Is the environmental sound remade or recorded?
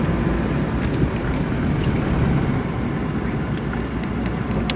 recorded